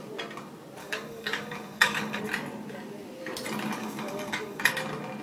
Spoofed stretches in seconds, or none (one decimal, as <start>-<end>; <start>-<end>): 0.8-2.2; 3.8-4.7

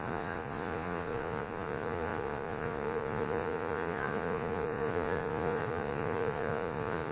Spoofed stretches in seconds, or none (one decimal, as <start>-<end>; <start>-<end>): 0.0-7.1